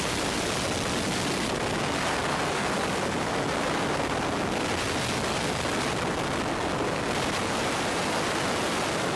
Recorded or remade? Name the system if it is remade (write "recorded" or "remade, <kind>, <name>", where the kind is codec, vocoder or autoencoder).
recorded